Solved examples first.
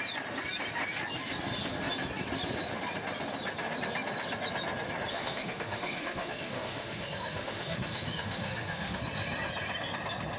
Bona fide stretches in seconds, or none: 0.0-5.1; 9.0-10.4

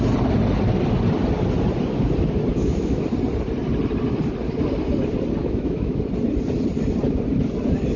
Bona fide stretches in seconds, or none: 0.0-2.5; 3.0-5.4; 6.0-8.0

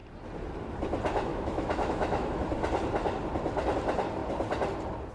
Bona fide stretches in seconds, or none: 0.0-1.3; 2.4-5.1

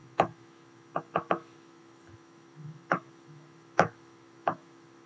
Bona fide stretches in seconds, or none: none

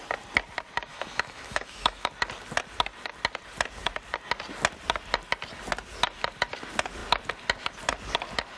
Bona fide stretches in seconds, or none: 0.0-0.9; 2.1-8.6